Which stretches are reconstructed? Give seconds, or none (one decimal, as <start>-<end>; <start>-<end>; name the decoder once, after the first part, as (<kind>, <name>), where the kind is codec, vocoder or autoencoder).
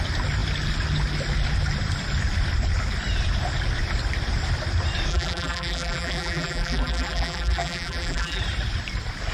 5.1-8.4 (vocoder, BigVGAN v2)